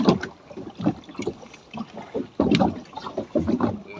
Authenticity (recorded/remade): recorded